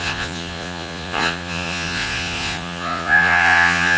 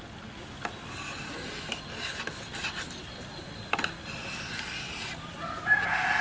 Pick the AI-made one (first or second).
first